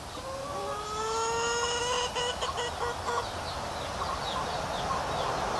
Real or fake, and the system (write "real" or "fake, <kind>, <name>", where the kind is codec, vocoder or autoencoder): real